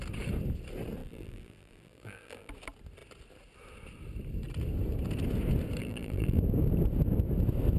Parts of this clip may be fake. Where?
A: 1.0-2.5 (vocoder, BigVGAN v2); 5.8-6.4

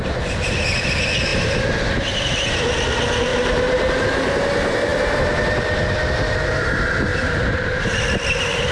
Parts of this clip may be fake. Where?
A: 1.3-1.8 (vocoder, BigVGAN v2); 3.3-3.9; 7.1-7.7